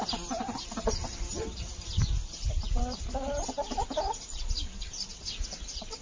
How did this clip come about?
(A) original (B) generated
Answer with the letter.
A